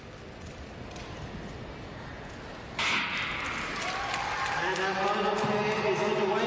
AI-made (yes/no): no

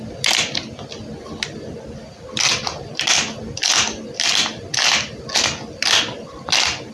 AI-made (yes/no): no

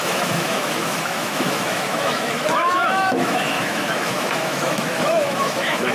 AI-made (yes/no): yes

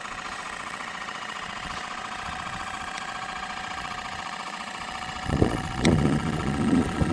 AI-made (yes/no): yes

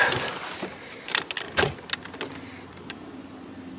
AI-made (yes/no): no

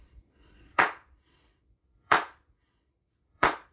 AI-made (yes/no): yes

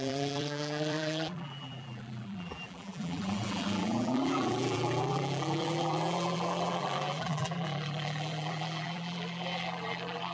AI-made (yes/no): yes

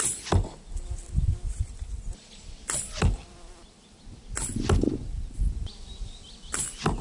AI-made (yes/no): no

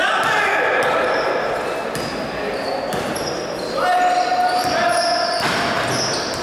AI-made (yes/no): no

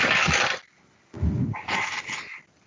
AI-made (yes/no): no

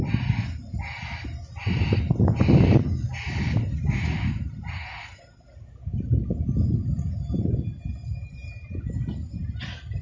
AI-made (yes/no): no